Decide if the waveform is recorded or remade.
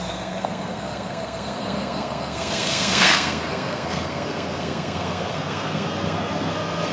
remade